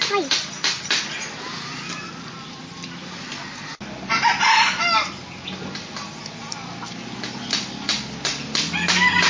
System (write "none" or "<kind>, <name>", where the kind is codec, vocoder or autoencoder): none